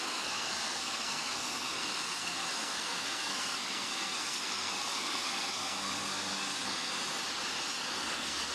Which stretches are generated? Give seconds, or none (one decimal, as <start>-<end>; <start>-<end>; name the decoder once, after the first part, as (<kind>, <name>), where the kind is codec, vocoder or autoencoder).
0.0-6.9 (codec, SNAC); 8.0-8.5